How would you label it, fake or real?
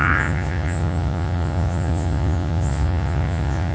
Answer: fake